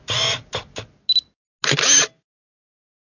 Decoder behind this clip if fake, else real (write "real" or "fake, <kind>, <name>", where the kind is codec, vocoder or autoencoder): real